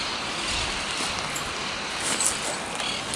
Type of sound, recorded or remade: recorded